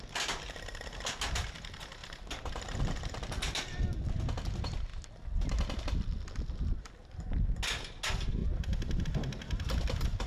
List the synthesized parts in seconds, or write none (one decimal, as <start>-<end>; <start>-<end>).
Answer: none